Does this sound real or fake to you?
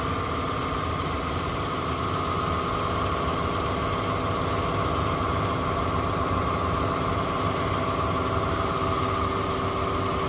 real